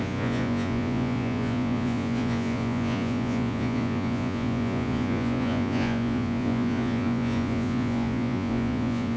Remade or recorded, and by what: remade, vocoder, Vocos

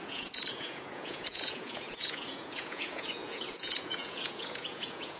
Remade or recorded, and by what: remade, vocoder, Vocos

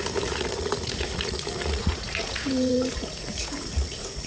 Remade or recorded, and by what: remade, vocoder, Vocos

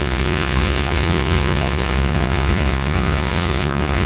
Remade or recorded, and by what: remade, vocoder, Vocos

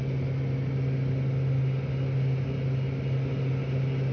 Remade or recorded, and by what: recorded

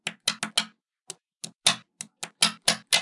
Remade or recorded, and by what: recorded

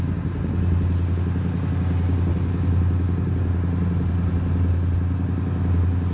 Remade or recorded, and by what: recorded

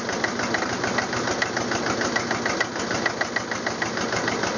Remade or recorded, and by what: recorded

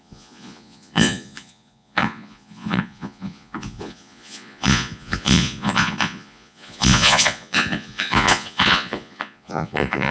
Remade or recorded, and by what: remade, vocoder, Vocos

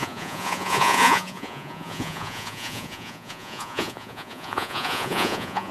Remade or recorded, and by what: remade, vocoder, Vocos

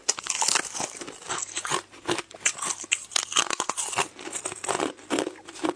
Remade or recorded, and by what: recorded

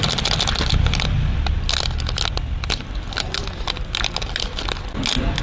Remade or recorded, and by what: recorded